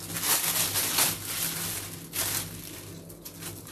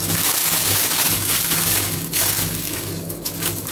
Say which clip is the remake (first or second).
second